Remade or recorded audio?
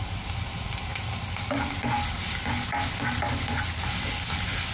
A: recorded